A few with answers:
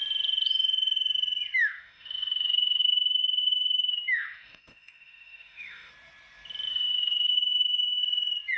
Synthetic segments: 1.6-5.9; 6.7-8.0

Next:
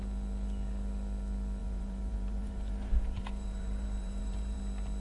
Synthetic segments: 1.6-4.6

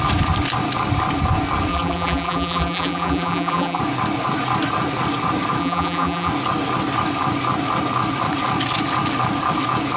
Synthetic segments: 1.7-3.8; 5.6-6.3

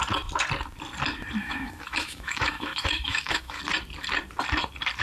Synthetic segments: 1.4-3.6

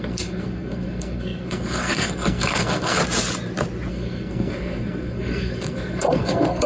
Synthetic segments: 0.0-3.0; 3.9-6.7

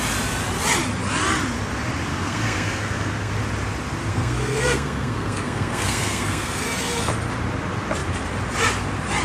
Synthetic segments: 2.1-3.3; 4.1-7.1